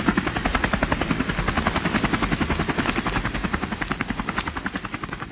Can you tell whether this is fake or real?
real